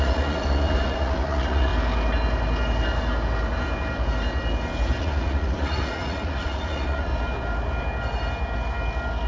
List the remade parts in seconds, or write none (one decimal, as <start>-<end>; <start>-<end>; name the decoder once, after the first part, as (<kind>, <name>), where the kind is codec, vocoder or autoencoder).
0.0-1.7 (vocoder, Vocos); 5.0-7.1